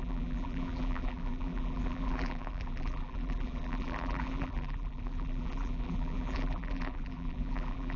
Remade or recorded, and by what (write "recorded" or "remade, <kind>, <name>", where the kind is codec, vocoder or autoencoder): remade, vocoder, BigVGAN v2